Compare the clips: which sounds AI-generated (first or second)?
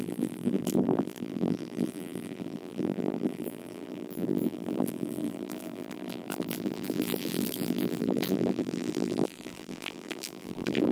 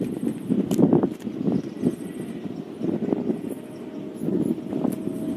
first